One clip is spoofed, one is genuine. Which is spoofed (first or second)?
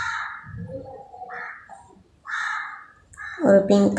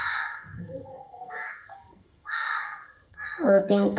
second